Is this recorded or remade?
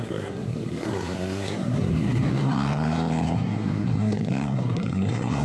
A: remade